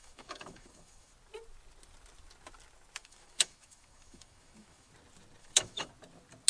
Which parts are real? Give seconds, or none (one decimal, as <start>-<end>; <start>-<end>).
1.1-3.0; 4.9-5.4; 5.9-6.5